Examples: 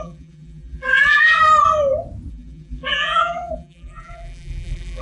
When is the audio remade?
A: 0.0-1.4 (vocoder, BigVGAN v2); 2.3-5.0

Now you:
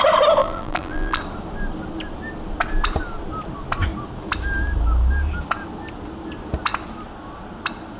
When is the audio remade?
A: 0.4-1.2 (vocoder, BigVGAN v2)

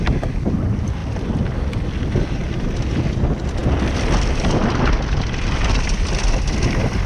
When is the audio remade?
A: none